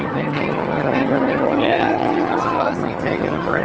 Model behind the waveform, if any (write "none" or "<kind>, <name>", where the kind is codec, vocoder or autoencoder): vocoder, HiFi-GAN